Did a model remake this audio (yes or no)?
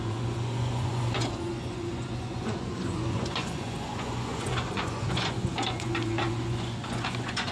yes